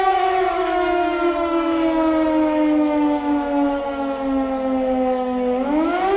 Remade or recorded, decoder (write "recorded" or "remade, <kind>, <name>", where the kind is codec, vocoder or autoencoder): remade, autoencoder, DAC-VAE